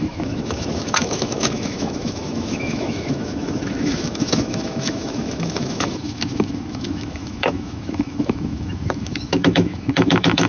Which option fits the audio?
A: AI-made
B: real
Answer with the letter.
A